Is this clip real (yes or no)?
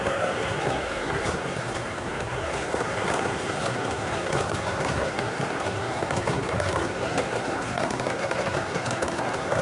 no